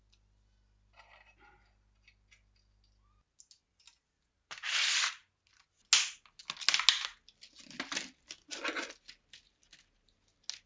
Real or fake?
real